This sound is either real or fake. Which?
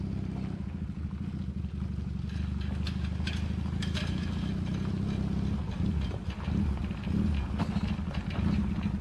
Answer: real